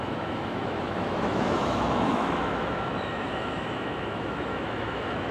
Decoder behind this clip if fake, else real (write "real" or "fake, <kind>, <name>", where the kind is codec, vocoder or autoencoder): fake, autoencoder, DAC-VAE